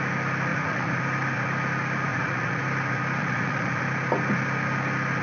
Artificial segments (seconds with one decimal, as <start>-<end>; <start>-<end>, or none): 0.5-1.0; 2.1-2.6; 3.2-3.8

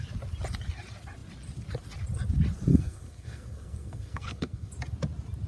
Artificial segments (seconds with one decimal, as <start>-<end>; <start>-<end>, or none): 2.7-4.7

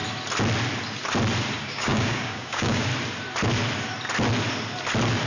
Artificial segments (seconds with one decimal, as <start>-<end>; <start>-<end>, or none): 1.6-2.9

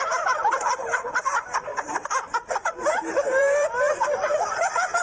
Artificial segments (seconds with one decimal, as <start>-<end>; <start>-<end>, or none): 0.0-1.7; 2.5-5.0

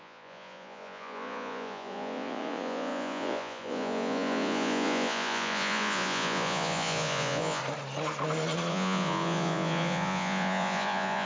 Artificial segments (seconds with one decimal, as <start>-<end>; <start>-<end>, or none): 0.0-7.6; 8.7-11.3

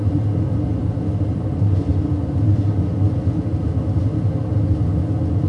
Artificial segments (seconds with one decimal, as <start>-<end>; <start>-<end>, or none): 0.8-1.9

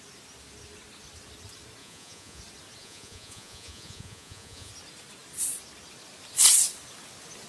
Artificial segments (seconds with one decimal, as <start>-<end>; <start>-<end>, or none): 1.8-2.4; 2.8-4.7

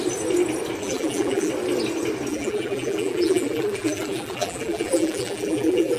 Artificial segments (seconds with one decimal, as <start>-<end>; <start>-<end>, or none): 0.8-1.5; 2.3-6.0